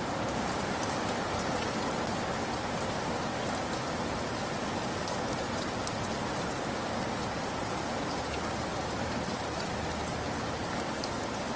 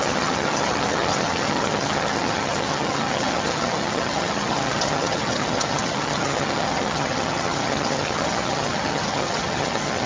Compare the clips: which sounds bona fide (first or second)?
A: first